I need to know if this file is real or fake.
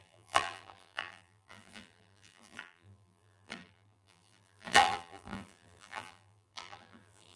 fake